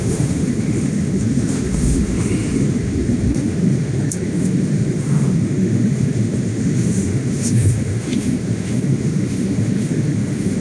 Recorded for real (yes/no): no